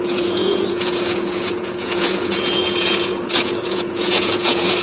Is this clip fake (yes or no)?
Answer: yes